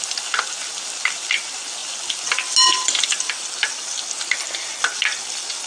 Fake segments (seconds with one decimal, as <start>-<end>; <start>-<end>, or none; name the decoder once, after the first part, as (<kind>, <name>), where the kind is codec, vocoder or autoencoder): none